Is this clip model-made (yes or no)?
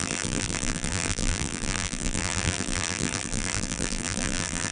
yes